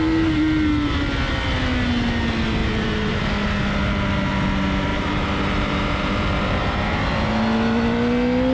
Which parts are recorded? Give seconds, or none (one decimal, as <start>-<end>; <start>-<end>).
0.0-2.6; 3.2-4.9; 7.0-8.5